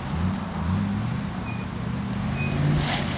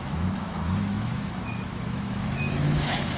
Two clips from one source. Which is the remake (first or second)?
second